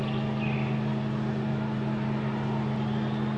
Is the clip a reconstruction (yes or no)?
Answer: no